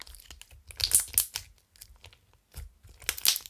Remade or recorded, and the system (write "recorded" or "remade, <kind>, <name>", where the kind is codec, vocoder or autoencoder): recorded